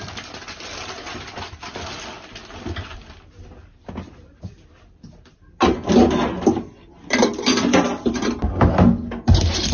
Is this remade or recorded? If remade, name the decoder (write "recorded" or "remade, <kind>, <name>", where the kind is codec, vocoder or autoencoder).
recorded